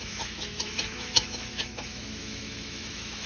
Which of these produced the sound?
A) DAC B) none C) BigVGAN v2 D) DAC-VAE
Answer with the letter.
D